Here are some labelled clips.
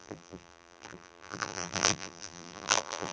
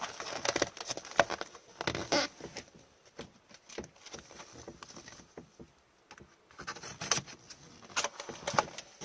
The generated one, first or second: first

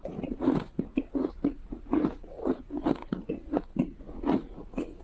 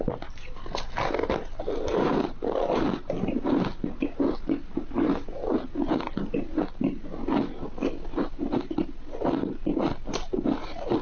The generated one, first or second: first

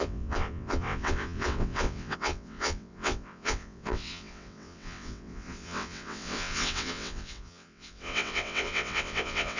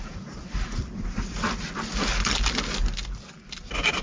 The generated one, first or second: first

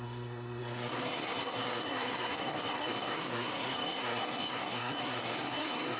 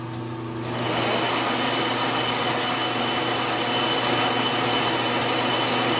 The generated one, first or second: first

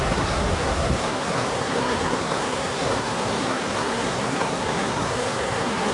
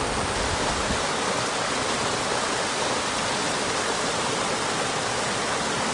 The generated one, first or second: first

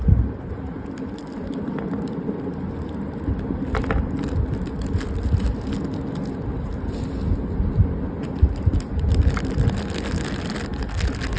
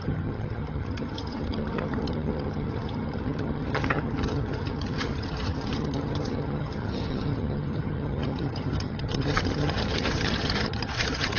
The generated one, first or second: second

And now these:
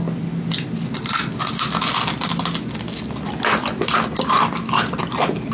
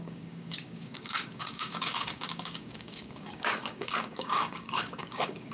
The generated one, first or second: second